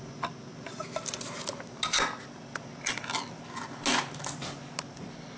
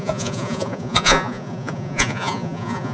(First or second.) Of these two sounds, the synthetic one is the second